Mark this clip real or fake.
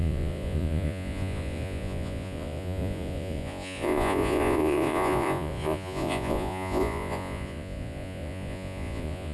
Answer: fake